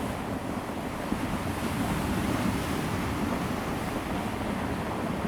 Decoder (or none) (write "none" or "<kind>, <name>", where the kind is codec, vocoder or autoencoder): none